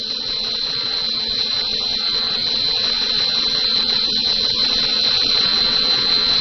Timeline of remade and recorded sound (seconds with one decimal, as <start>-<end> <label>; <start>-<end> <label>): 0.0-6.4 remade